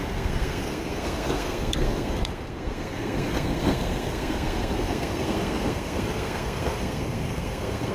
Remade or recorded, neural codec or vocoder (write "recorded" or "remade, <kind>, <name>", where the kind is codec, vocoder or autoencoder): remade, codec, SNAC